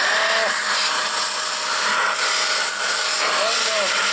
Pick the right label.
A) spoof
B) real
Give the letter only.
B